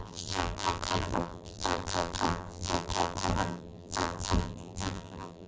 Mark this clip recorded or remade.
remade